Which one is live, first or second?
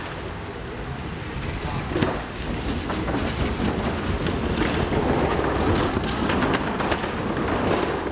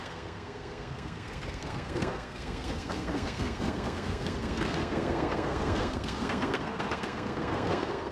first